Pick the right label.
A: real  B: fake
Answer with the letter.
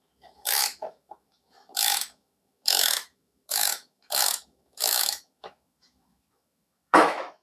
B